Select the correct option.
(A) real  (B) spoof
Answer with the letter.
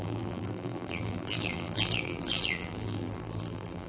B